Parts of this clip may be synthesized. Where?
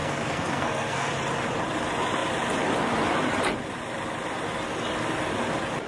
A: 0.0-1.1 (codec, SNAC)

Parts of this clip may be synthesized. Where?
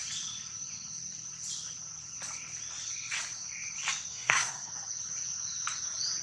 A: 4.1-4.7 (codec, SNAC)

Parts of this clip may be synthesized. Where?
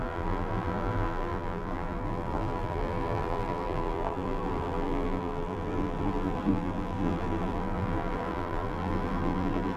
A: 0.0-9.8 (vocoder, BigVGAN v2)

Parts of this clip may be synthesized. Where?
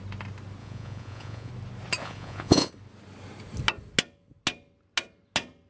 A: 0.6-1.5 (vocoder, Vocos); 2.0-2.7